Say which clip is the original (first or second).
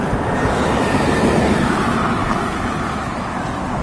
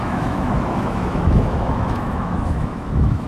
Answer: first